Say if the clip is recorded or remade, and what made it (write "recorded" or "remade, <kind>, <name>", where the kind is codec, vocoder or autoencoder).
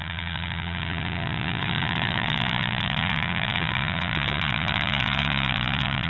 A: remade, vocoder, Vocos